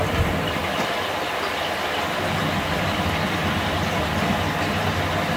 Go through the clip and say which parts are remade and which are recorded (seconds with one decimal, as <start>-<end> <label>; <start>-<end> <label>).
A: 0.0-0.6 remade; 0.6-1.3 recorded; 1.3-5.4 remade